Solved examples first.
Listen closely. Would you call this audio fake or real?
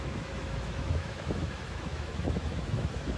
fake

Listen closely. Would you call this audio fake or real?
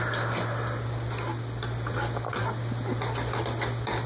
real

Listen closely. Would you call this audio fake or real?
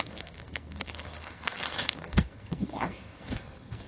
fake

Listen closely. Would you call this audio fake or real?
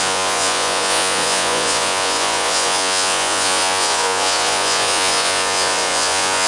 fake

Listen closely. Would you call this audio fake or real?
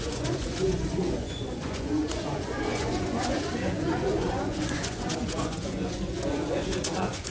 fake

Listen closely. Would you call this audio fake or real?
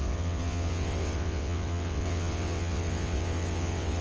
fake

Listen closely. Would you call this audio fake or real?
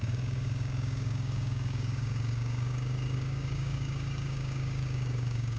fake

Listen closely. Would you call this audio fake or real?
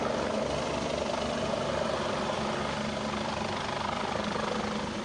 real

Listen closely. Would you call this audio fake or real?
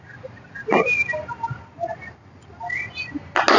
real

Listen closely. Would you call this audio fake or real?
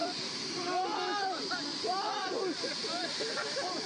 real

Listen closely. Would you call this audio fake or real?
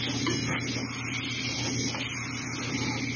real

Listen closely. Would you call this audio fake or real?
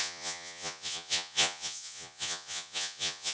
fake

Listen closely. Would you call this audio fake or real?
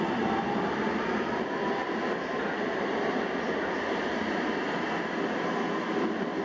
real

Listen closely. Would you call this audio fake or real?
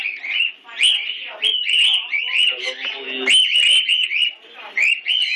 real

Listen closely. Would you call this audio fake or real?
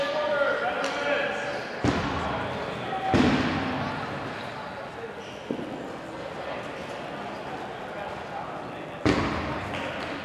real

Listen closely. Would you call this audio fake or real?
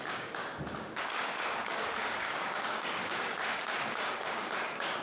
fake